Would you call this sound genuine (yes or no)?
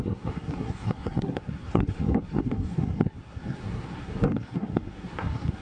no